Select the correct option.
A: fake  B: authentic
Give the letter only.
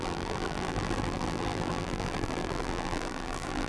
A